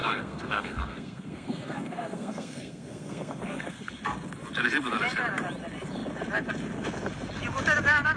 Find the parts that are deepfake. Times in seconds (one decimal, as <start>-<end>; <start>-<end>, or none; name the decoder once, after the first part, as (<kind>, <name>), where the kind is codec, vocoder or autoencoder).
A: 0.0-3.9 (codec, SNAC)